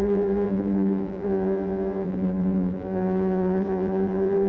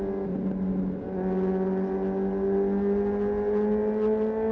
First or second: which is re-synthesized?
first